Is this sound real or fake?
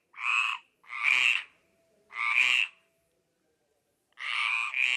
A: fake